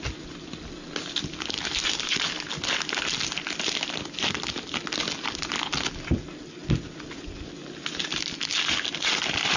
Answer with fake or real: real